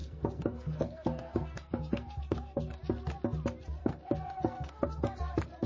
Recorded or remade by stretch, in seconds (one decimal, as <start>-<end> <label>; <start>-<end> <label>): 0.0-2.8 remade; 2.8-3.8 recorded; 3.8-5.2 remade; 5.2-5.7 recorded